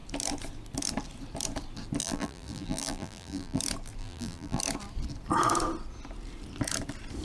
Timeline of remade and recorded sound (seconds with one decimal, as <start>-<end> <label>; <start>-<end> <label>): 0.0-2.0 recorded; 2.0-3.6 remade; 3.6-4.0 recorded; 4.0-4.6 remade; 4.6-7.2 recorded